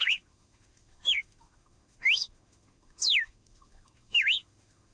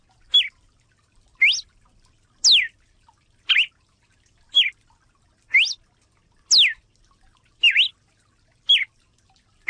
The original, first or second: second